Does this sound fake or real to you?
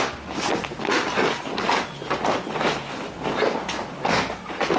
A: real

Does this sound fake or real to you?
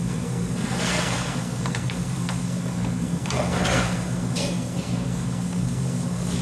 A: fake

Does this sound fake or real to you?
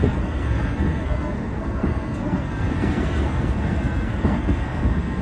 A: fake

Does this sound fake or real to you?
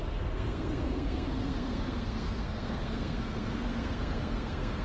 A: fake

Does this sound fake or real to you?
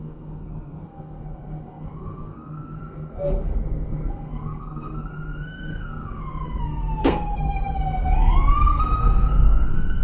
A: fake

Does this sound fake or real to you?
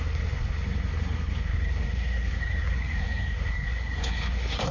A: fake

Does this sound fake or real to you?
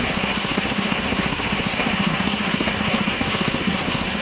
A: fake